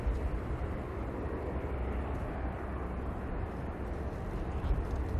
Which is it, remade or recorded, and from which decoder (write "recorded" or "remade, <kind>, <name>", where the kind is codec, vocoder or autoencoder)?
recorded